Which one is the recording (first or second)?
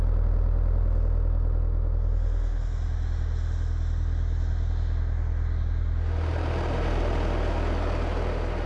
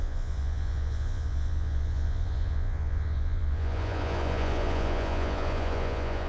first